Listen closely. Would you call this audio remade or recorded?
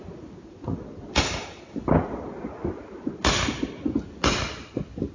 recorded